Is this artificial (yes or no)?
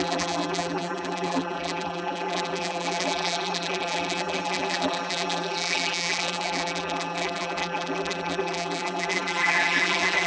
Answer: yes